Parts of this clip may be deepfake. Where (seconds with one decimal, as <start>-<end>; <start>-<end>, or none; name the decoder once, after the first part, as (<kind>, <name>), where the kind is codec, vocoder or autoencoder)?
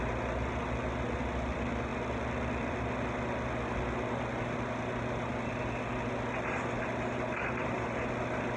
none